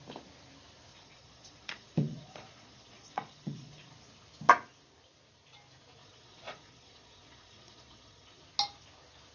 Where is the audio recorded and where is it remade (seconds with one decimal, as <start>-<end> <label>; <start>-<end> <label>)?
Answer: 0.0-0.9 recorded; 0.9-3.9 remade; 3.9-6.0 recorded; 6.0-8.4 remade; 8.4-9.3 recorded